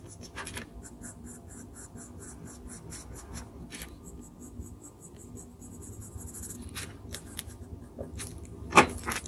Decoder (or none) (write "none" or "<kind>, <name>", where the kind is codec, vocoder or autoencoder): none